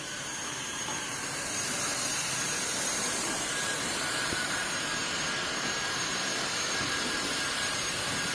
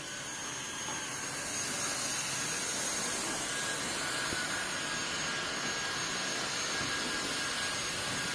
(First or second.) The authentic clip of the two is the second